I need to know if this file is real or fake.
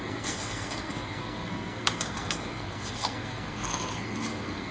fake